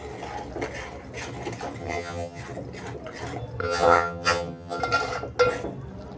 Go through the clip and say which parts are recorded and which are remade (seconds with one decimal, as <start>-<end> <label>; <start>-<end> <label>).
0.0-1.8 recorded; 1.8-2.4 remade; 2.4-3.6 recorded; 3.6-4.8 remade; 4.8-6.2 recorded